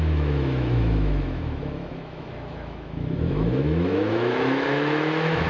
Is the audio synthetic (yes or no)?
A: yes